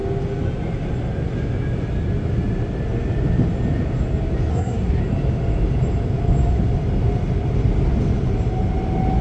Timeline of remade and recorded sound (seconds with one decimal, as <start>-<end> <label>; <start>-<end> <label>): 0.0-4.5 recorded; 4.5-5.0 remade; 5.0-9.2 recorded